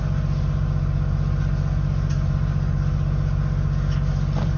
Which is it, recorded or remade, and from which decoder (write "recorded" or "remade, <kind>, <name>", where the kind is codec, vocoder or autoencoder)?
recorded